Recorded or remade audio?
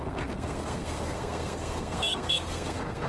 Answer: remade